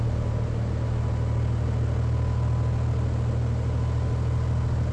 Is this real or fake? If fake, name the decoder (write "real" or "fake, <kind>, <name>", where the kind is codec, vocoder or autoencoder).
real